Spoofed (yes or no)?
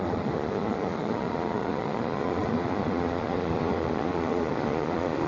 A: yes